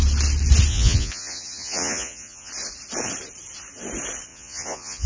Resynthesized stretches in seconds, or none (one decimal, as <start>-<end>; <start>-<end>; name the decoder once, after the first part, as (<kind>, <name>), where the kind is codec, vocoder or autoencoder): 0.7-2.5 (vocoder, Vocos); 4.3-5.1